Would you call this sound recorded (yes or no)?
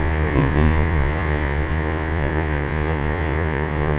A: no